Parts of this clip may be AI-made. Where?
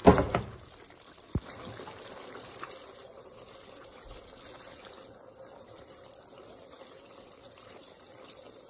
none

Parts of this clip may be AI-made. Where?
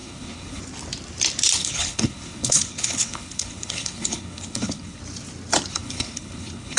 0.0-0.6 (codec, HILCodec); 1.6-5.0; 5.7-6.8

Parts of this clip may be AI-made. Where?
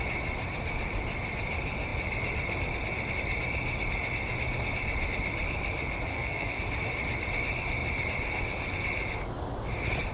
6.1-6.6 (codec, SNAC)